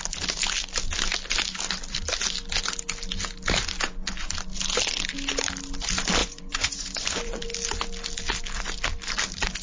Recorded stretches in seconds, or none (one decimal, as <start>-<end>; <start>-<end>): 0.0-6.2; 7.4-9.6